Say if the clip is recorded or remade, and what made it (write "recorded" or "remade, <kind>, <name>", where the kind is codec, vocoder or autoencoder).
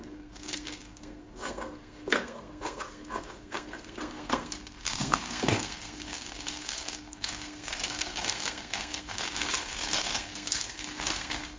remade, codec, SNAC